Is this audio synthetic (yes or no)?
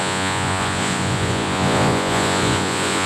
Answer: yes